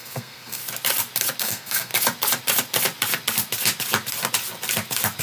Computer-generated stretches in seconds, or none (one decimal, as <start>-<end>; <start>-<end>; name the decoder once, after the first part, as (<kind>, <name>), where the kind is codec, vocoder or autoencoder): 0.0-0.6 (codec, SNAC); 1.4-1.9